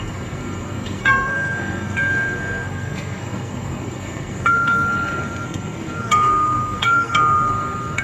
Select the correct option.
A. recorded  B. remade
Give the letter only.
B